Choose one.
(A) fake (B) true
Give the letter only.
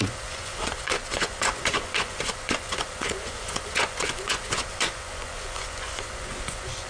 A